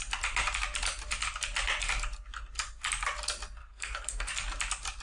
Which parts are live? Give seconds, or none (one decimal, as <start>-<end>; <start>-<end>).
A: 0.0-3.6; 4.3-5.0